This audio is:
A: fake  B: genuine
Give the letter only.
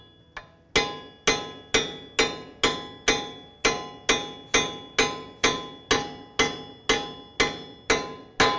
B